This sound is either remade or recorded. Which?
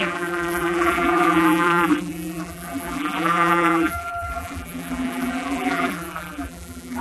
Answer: remade